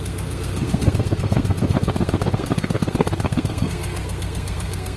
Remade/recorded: remade